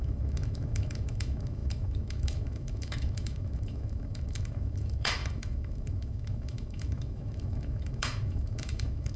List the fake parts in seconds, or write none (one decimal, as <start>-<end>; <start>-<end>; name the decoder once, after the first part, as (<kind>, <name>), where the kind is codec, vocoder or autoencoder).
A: 0.0-9.2 (autoencoder, DAC-VAE)

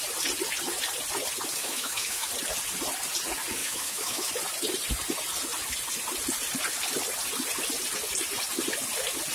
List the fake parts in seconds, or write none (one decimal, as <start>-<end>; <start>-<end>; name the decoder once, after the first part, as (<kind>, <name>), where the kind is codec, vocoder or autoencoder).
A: 1.6-2.3 (autoencoder, DAC-VAE); 3.6-4.3

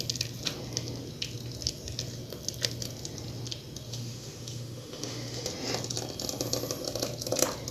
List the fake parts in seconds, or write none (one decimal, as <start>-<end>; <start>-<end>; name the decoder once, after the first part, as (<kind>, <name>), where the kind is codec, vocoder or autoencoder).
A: 3.9-5.5 (autoencoder, DAC-VAE)